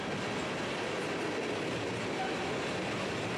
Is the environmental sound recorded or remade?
recorded